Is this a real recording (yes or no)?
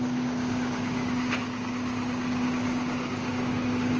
no